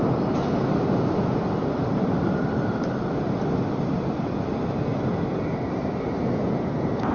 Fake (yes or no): no